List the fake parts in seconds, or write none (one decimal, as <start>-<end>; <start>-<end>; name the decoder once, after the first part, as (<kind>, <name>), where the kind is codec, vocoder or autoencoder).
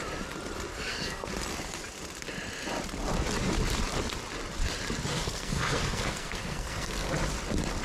0.7-1.3 (codec, SNAC); 5.1-7.1